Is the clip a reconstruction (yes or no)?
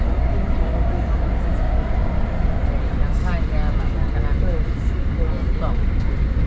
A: no